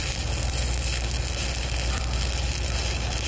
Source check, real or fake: real